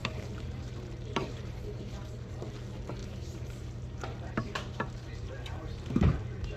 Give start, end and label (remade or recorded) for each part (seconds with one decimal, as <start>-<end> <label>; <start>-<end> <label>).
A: 0.0-2.3 remade; 2.3-3.0 recorded; 3.0-6.6 remade